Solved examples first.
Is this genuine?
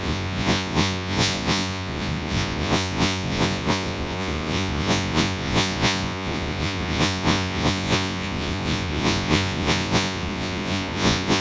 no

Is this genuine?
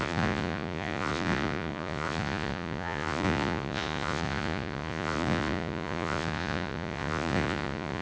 no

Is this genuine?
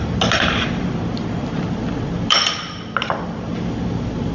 yes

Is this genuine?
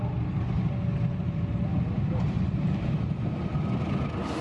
yes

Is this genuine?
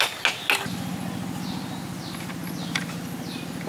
yes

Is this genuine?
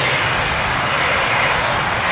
yes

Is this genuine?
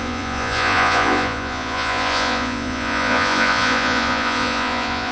no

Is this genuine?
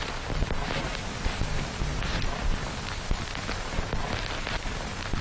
yes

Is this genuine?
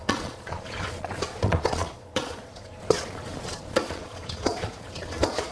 no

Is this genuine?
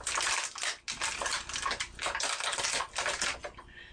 yes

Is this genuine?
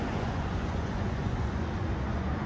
no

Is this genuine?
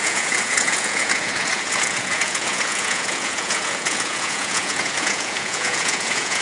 no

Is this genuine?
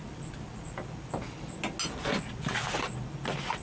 yes